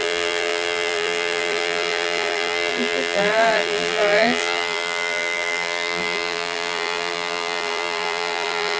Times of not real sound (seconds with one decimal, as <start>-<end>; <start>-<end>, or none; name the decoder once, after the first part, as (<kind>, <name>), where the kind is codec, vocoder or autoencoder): 0.0-8.8 (vocoder, BigVGAN v2)